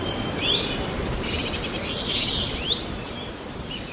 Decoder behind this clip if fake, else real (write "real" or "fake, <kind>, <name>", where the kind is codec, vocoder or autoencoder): fake, vocoder, BigVGAN v2